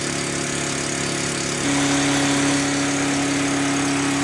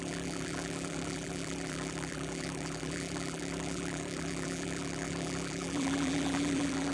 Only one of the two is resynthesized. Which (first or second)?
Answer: second